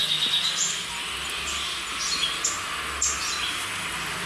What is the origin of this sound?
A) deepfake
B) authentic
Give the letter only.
B